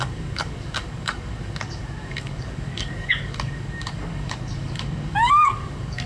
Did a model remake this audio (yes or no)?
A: yes